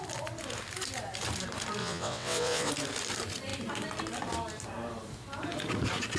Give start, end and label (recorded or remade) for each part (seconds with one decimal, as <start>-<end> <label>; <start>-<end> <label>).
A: 0.0-1.8 recorded; 1.8-2.7 remade; 2.7-6.2 recorded